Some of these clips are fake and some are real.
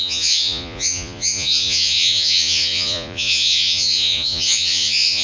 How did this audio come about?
fake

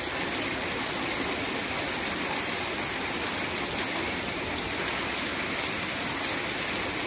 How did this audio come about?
real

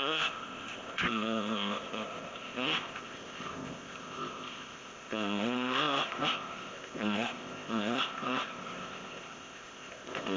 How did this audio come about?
fake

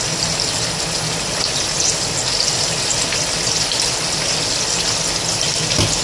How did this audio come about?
real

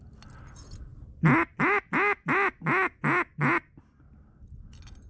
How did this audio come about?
real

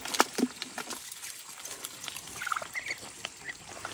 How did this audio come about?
real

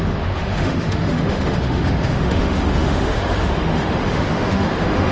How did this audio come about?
fake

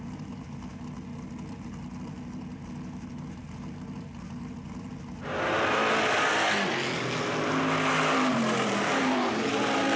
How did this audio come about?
real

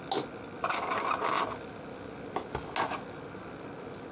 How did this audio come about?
real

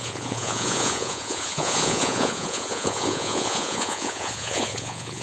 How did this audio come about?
fake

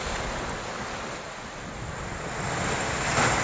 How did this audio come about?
real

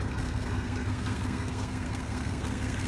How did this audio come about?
fake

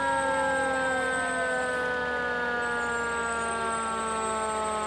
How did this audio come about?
real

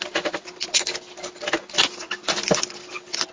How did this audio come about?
real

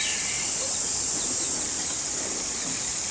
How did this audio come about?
real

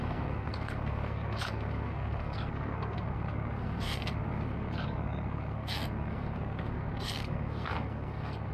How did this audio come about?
fake